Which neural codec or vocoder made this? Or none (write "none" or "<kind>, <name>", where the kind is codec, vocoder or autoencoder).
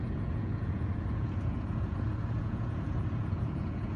vocoder, Vocos